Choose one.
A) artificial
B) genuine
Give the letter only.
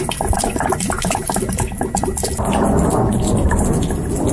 B